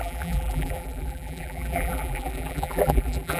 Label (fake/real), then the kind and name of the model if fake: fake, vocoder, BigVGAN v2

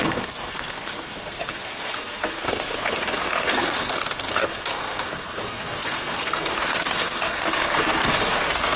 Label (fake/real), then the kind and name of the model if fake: fake, codec, SNAC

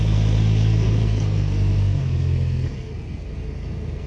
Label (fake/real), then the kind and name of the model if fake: fake, codec, SNAC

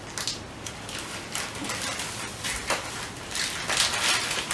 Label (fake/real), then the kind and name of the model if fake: fake, vocoder, BigVGAN v2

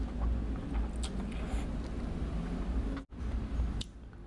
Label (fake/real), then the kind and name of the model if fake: real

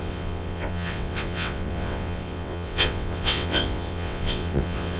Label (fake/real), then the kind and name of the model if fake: fake, vocoder, WaveNeXt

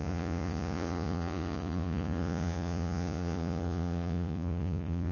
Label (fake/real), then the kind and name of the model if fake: fake, vocoder, Vocos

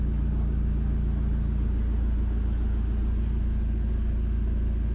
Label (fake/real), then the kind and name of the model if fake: real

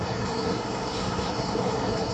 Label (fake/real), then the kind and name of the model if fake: fake, codec, SNAC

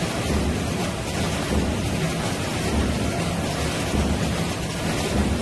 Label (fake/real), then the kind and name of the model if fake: real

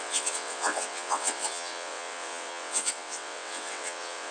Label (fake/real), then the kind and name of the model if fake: fake, vocoder, WaveNeXt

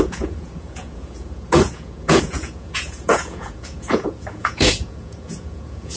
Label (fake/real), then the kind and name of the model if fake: fake, vocoder, Vocos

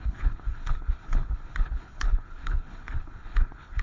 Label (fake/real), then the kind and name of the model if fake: fake, codec, HILCodec